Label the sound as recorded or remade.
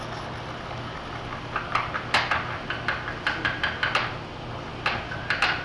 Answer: recorded